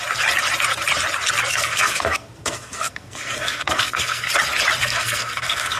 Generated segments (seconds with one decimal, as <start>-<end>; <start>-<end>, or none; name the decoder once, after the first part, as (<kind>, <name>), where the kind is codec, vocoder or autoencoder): 1.5-4.3 (codec, SNAC); 4.8-5.8